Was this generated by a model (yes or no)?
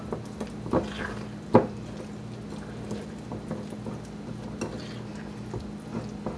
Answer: no